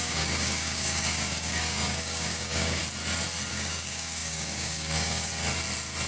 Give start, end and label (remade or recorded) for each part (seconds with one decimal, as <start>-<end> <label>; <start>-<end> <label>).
0.0-2.8 remade; 2.8-3.5 recorded; 3.5-5.3 remade; 5.3-6.1 recorded